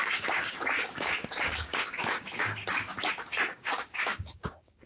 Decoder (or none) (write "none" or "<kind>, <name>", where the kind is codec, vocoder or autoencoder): codec, DAC